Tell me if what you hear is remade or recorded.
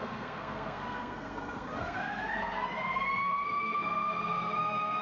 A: remade